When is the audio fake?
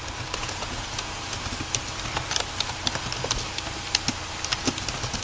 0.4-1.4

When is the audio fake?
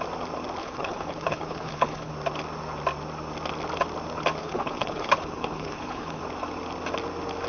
0.6-2.1; 4.4-6.2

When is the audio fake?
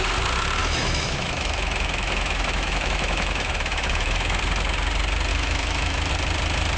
0.6-4.4; 5.3-6.1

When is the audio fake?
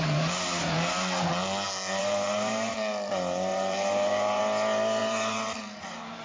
2.0-2.7; 3.5-4.4; 5.0-6.2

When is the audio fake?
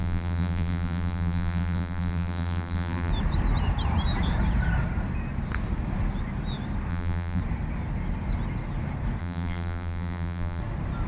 0.0-3.1; 6.9-7.4; 9.2-10.6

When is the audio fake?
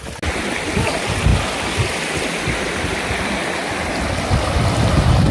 1.3-4.2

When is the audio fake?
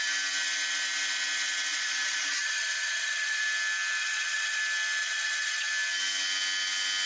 1.7-3.4; 4.0-4.6; 5.0-5.7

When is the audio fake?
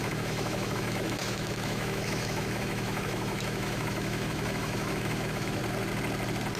0.0-5.6